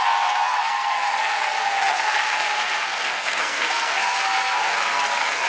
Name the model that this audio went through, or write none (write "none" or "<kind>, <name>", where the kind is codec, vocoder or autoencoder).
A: codec, SNAC